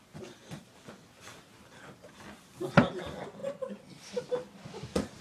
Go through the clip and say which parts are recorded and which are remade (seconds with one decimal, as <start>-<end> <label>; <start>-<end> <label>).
0.0-5.2 recorded